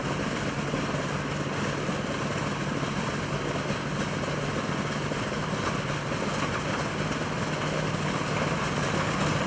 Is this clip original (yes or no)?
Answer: yes